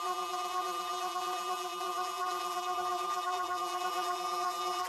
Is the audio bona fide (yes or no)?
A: no